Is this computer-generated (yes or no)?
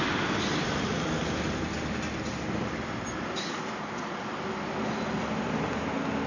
no